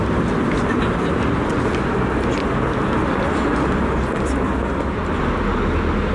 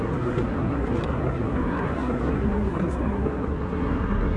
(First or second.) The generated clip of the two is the second